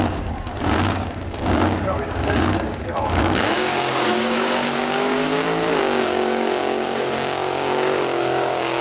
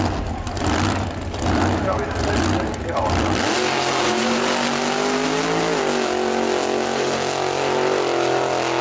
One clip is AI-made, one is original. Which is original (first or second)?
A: second